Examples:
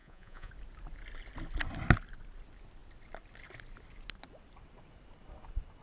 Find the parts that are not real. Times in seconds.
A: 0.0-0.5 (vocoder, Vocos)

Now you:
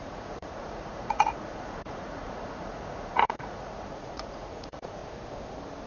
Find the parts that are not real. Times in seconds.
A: 0.0-5.0 (vocoder, Vocos)

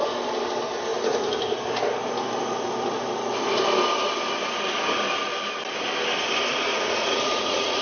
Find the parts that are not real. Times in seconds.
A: 6.7-7.8 (vocoder, Vocos)

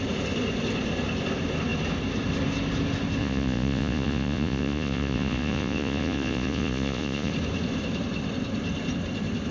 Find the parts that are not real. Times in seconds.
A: 3.2-7.3 (vocoder, Vocos)

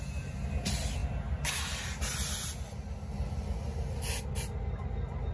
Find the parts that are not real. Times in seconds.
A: none